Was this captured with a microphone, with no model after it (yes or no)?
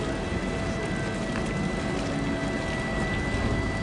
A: yes